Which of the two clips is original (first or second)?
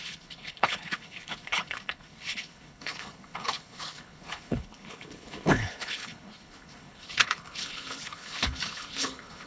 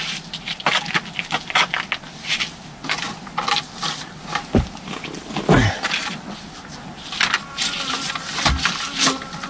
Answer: second